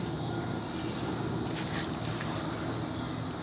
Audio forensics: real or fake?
real